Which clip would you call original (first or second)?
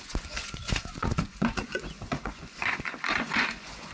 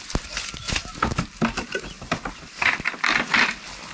second